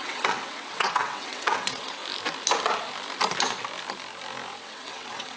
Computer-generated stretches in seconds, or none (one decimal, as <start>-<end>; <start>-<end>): 0.0-2.0; 4.6-5.4